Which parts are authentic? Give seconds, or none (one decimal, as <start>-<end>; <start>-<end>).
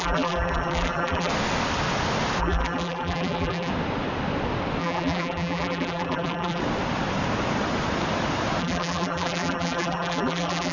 1.3-2.4; 3.7-4.8; 6.6-8.6